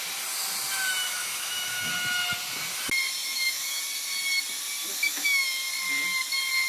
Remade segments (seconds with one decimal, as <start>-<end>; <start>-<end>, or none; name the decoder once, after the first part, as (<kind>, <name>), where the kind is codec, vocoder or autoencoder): 1.0-1.9 (autoencoder, DAC-VAE); 3.2-3.8; 5.1-5.7